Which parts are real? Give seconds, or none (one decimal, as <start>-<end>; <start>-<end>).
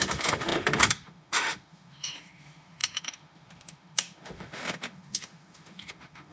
none